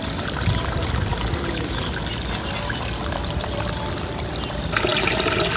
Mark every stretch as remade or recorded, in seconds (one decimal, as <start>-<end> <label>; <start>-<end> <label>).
0.0-1.1 remade; 1.1-4.0 recorded; 4.0-4.9 remade; 4.9-5.6 recorded